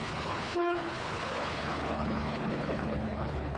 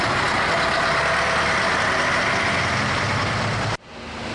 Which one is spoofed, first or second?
first